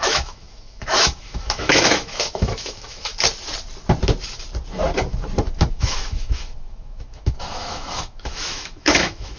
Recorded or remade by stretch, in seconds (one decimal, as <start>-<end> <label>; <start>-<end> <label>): 0.0-3.1 remade; 3.1-5.7 recorded; 5.7-9.4 remade